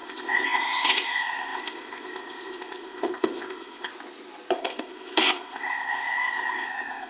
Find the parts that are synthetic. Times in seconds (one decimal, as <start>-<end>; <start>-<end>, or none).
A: 0.0-3.9; 4.6-7.1